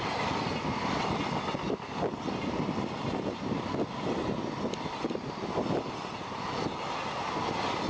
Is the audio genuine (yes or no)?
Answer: yes